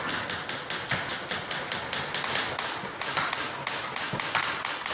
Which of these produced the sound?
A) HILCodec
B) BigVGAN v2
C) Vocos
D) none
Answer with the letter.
D